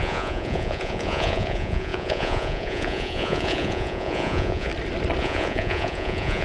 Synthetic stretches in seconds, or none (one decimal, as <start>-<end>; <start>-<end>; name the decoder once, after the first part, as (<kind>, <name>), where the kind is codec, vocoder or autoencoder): 0.0-4.7 (vocoder, Vocos); 5.2-6.4